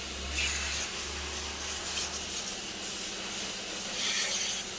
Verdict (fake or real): real